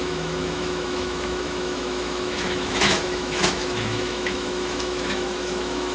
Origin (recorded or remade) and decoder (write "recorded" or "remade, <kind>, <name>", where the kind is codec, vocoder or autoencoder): remade, autoencoder, DAC-VAE